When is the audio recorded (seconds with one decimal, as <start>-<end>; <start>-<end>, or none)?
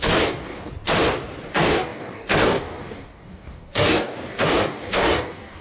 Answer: 0.7-1.5